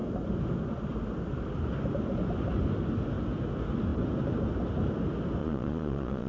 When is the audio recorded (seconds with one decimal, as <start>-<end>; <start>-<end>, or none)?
0.0-5.4